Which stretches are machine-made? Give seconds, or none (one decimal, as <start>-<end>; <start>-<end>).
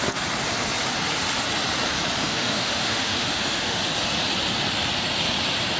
2.2-3.8